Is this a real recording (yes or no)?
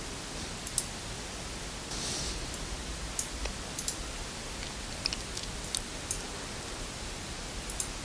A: yes